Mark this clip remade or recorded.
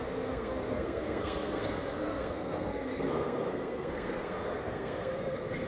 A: remade